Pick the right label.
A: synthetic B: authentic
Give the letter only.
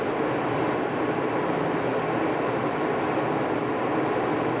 B